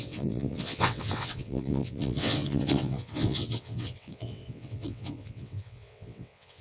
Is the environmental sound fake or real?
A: fake